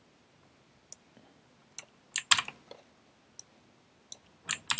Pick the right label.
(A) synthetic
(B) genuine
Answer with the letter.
B